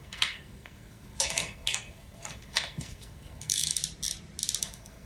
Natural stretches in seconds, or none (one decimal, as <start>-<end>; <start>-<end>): 3.8-4.6